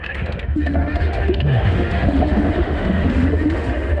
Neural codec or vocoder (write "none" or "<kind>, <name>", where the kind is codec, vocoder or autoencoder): autoencoder, DAC-VAE